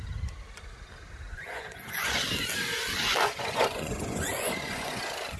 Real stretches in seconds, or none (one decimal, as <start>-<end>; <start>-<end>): 0.0-1.3; 2.1-3.1; 5.0-5.4